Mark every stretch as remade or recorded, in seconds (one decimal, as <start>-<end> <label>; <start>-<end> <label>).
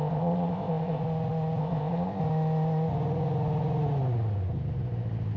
0.0-1.0 remade; 1.0-1.6 recorded; 1.6-2.2 remade; 2.2-5.4 recorded